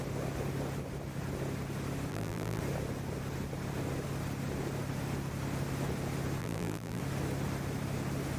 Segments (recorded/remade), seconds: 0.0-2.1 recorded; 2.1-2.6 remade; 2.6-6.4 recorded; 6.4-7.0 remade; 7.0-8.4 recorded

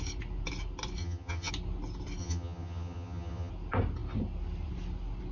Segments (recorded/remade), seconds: 0.0-1.0 recorded; 1.0-1.5 remade; 1.5-2.2 recorded; 2.2-3.5 remade; 3.5-5.3 recorded